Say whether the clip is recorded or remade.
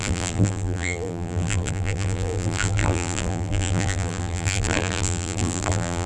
remade